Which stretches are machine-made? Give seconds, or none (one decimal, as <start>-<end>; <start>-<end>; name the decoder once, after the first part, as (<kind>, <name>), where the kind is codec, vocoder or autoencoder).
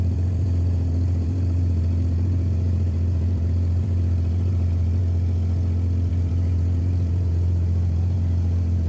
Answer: 0.0-5.0 (vocoder, BigVGAN v2); 6.1-8.9